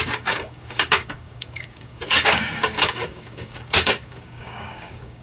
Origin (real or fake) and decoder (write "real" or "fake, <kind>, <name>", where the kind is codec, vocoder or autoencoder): fake, codec, DAC